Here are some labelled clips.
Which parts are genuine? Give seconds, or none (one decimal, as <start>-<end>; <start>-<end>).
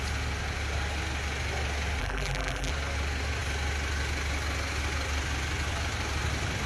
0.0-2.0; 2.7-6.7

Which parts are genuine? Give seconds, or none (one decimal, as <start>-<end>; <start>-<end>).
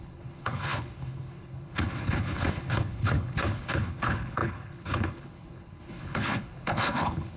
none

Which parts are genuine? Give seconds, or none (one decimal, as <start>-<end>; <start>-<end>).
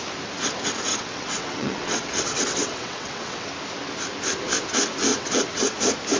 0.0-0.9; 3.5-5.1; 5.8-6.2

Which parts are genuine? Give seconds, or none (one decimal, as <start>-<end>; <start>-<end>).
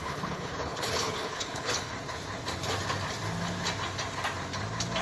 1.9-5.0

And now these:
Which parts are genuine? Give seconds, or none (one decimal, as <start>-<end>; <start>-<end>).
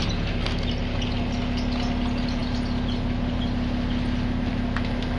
0.0-5.2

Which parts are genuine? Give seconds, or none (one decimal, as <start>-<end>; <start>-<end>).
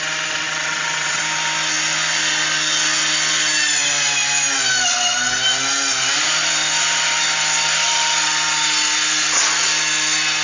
0.0-0.4; 1.2-10.4